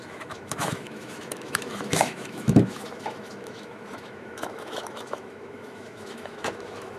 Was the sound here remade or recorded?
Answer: remade